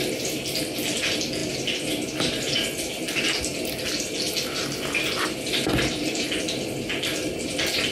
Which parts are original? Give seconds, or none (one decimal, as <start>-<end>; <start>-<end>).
0.0-7.9